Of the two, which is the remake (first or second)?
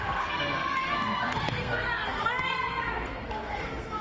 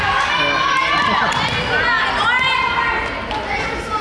first